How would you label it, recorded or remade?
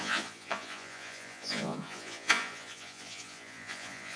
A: remade